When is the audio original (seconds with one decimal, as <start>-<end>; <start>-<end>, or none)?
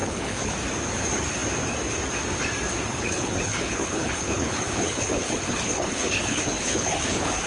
0.5-2.9